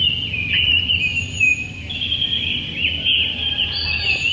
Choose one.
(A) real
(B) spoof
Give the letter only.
A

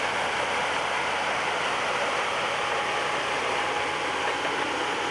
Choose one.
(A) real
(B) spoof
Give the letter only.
B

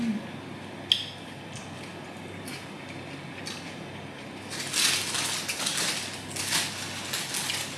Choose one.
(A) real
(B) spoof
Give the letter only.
A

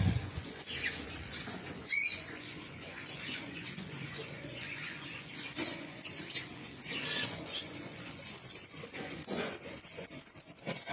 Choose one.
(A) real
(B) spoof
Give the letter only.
B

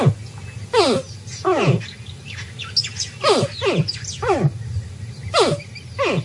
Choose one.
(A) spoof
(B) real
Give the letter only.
B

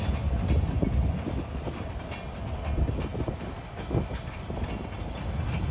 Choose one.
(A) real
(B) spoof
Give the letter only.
A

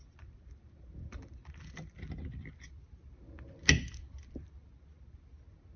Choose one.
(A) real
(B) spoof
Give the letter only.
A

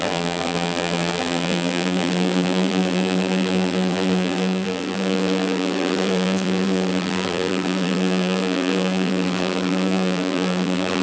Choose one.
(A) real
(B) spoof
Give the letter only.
B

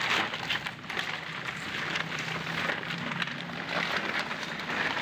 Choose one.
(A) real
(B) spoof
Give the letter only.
A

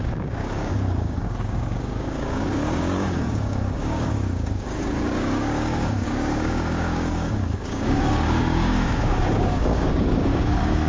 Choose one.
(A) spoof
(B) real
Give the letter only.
A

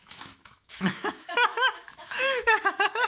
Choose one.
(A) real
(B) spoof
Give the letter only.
B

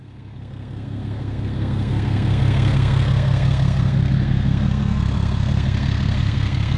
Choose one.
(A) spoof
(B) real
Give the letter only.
A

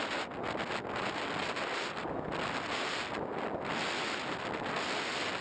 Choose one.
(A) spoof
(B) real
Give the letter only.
B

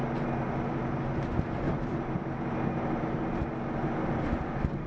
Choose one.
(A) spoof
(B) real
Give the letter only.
B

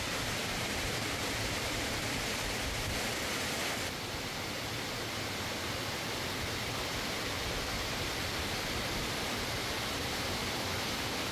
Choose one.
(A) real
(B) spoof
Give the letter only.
B